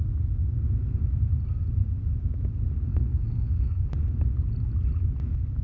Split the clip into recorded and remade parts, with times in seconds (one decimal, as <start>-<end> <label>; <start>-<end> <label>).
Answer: 0.0-2.9 recorded; 2.9-3.9 remade; 3.9-5.6 recorded